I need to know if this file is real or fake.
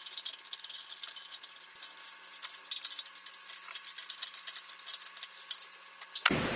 real